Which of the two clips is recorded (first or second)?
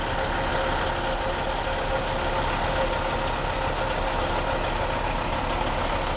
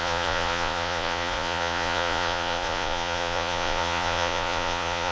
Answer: first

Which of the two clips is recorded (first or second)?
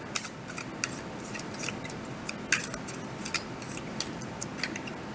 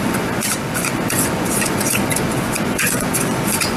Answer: first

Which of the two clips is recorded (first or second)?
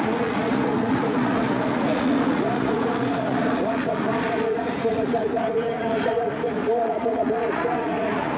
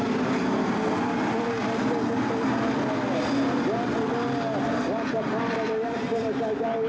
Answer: second